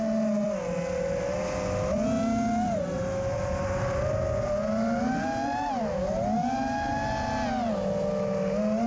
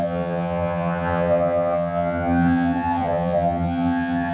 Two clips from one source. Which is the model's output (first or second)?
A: second